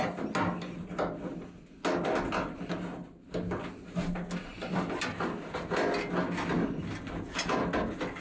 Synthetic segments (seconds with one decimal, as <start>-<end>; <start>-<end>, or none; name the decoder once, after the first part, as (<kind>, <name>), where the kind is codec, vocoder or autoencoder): none